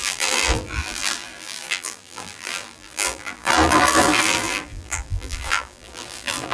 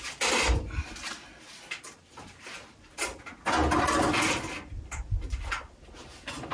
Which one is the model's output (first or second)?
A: first